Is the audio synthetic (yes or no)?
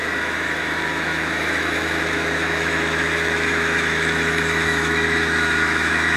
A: yes